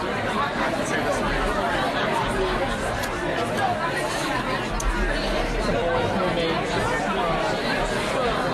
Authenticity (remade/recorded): recorded